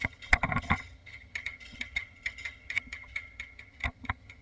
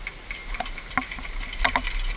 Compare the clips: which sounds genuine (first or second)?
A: second